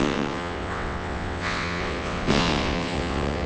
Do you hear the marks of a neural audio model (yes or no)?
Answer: yes